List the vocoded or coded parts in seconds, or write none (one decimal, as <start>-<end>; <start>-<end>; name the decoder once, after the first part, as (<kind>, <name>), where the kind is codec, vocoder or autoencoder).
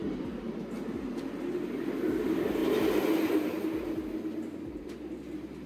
none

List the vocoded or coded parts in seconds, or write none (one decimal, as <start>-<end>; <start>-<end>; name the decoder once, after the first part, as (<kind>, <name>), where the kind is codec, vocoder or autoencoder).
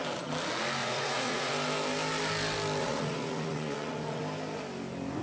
0.8-1.5 (vocoder, Vocos); 2.8-4.2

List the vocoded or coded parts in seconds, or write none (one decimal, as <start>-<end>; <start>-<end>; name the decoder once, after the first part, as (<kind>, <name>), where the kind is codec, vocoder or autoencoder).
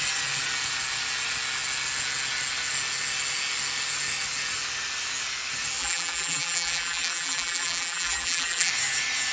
5.8-8.7 (vocoder, BigVGAN v2)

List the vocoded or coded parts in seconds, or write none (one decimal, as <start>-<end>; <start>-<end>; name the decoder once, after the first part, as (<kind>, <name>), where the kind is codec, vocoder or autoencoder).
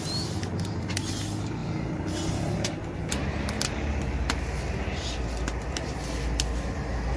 none